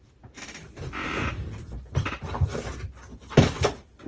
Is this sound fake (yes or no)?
no